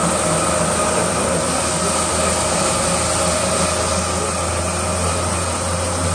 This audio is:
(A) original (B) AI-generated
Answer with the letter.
A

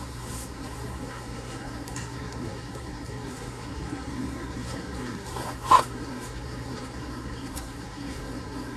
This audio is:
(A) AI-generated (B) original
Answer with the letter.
A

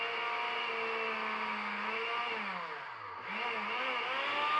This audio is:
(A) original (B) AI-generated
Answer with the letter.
A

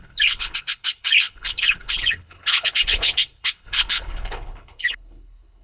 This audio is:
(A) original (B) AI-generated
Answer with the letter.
B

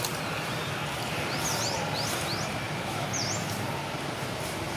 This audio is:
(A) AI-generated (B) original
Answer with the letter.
B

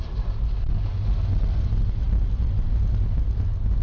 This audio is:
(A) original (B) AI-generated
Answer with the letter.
A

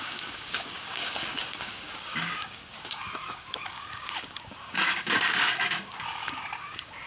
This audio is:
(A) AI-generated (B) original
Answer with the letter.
A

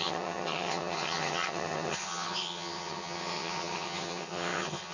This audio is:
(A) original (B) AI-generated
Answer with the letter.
B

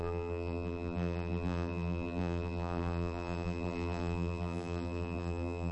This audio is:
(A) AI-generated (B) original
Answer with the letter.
A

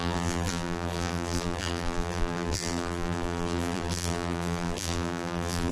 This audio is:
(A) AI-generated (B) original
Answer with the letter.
A